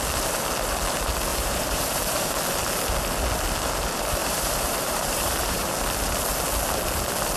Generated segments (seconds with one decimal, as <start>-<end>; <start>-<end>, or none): 1.3-2.3; 4.2-5.7